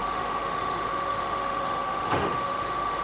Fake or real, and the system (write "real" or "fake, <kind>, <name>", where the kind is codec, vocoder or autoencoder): fake, autoencoder, DAC-VAE